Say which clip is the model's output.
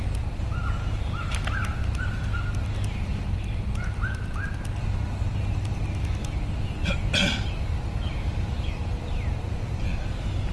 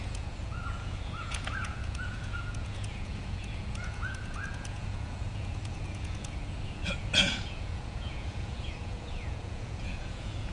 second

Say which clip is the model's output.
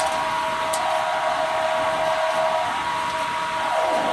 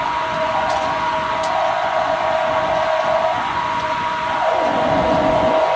second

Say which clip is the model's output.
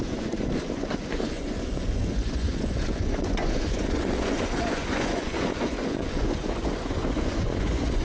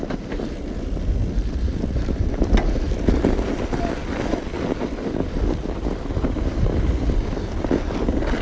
first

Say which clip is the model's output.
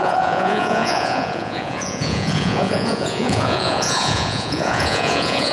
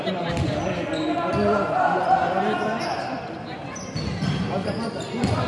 first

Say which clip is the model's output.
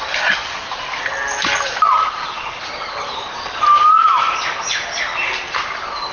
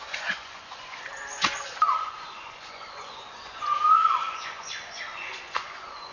second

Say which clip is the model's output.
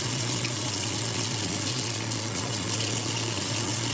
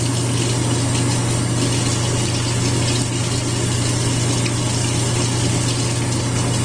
first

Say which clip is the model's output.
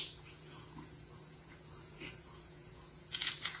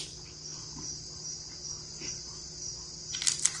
first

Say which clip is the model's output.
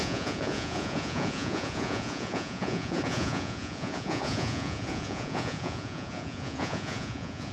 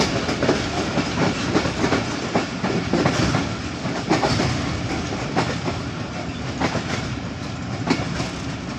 first